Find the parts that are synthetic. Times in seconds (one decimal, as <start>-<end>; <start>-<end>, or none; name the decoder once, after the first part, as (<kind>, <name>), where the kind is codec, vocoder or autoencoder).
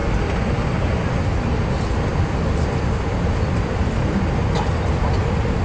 none